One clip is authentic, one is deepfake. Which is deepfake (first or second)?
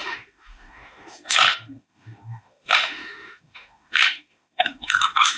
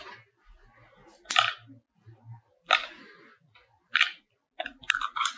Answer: first